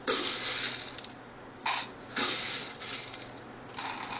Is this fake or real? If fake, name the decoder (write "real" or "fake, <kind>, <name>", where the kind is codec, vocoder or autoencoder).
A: real